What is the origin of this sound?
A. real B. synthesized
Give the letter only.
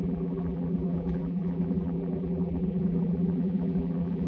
B